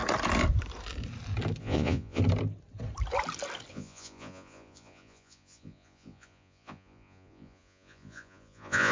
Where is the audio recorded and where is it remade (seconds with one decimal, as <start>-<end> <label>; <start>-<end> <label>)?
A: 0.0-1.6 recorded; 1.6-2.2 remade; 2.2-3.7 recorded; 3.7-8.9 remade